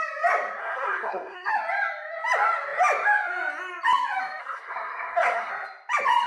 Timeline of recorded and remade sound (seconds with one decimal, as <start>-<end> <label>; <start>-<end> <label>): 0.0-0.6 recorded; 0.6-1.5 remade; 1.5-4.4 recorded; 4.4-5.5 remade; 5.5-6.3 recorded